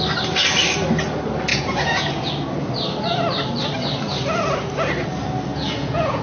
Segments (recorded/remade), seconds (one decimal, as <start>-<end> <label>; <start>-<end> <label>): 0.0-1.5 recorded; 1.5-2.3 remade; 2.3-5.5 recorded; 5.5-6.2 remade